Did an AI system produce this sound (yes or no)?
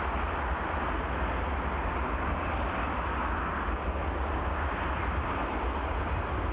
no